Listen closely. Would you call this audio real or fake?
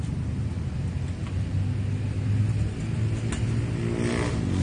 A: real